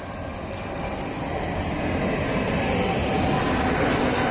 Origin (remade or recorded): recorded